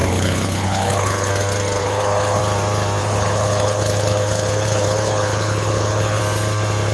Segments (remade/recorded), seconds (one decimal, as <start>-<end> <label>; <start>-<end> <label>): 0.0-1.3 remade; 1.3-1.8 recorded; 1.8-2.4 remade; 2.4-3.0 recorded; 3.0-6.2 remade; 6.2-6.9 recorded